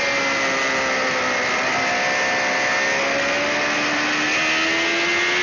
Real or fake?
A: real